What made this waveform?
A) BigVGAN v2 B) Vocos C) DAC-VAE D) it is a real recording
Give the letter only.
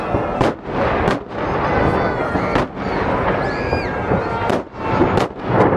D